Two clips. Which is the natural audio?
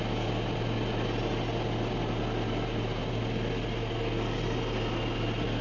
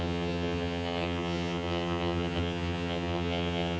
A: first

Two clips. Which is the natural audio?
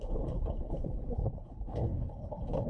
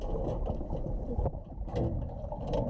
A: second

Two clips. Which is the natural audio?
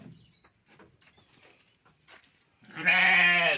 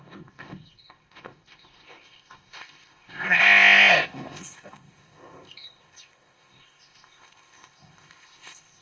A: first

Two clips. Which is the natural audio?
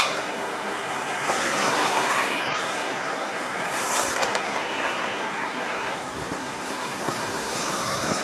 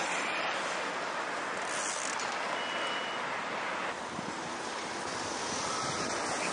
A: second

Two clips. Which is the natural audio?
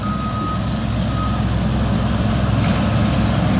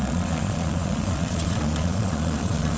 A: first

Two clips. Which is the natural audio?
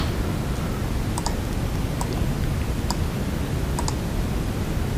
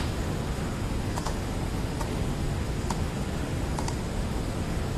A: first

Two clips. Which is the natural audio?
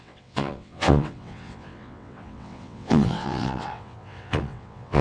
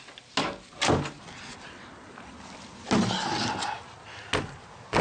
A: second